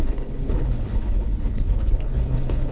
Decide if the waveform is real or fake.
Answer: fake